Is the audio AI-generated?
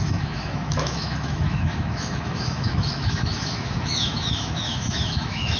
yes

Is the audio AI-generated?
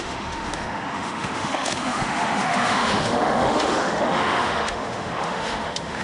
yes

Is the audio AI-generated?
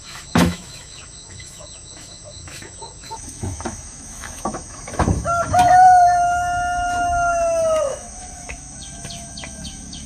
yes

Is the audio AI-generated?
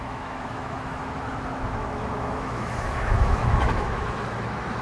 yes